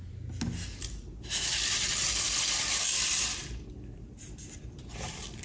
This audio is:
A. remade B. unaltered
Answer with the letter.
B